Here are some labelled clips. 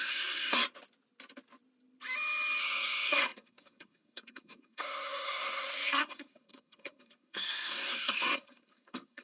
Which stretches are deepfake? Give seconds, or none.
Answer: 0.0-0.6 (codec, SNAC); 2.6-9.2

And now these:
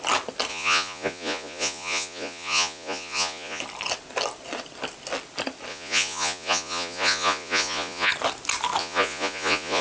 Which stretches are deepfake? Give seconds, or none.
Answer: 0.5-3.6 (vocoder, Vocos); 5.7-8.1; 8.8-9.8